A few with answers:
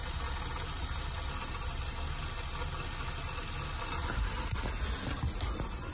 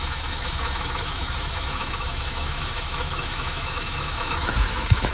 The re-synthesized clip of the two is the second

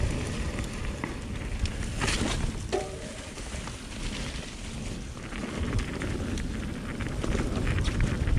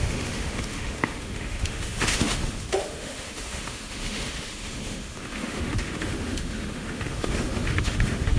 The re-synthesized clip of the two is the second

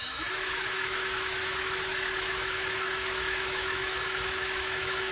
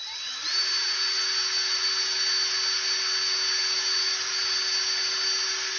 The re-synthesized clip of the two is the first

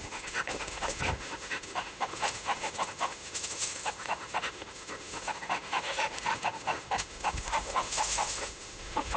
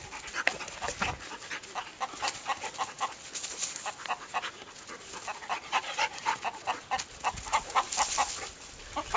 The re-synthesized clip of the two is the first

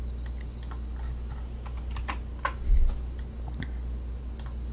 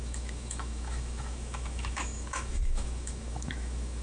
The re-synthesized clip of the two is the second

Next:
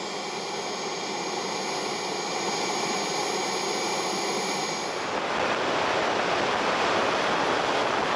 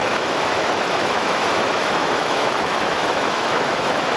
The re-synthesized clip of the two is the second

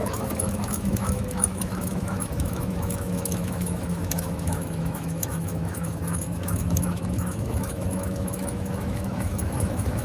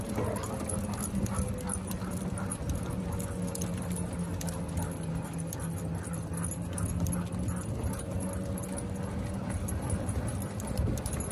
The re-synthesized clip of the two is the first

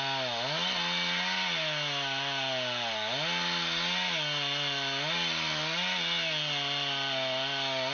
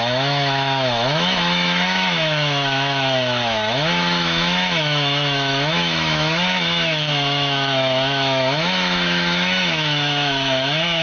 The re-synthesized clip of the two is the second